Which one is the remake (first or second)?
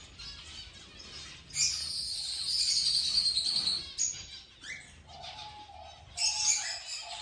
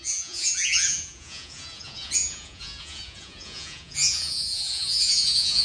second